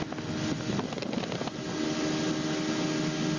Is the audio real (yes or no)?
yes